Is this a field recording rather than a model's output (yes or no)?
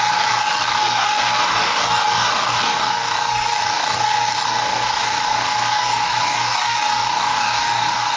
no